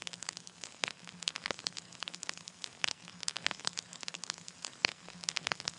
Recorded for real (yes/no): no